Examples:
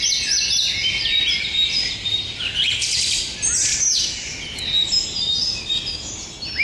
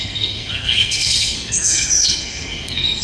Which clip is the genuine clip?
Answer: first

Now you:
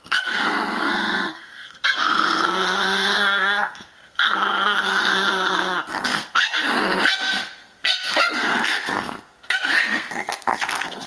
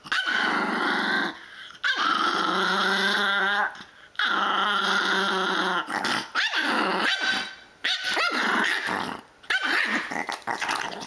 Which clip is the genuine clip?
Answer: second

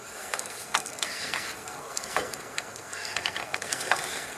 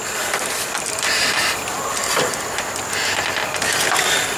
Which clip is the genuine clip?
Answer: second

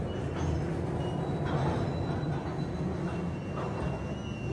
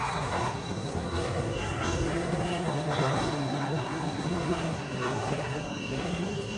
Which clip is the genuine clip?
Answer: first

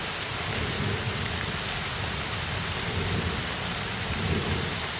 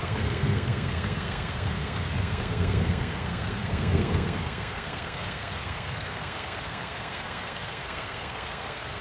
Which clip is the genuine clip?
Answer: first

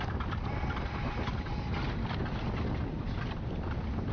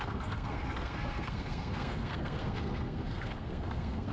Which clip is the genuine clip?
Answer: first